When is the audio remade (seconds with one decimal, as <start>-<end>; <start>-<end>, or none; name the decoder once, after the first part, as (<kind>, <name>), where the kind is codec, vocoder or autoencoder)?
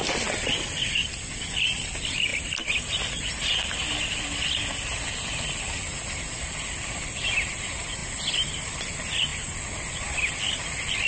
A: none